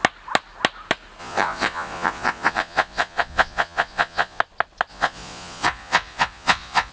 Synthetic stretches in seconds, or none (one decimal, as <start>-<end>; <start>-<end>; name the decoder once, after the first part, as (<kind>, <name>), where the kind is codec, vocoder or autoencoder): 1.2-4.4 (vocoder, Vocos); 4.9-6.9